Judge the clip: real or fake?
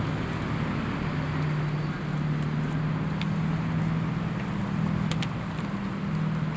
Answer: real